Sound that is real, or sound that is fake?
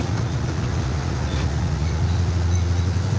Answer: fake